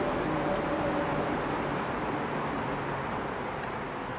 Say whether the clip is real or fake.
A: real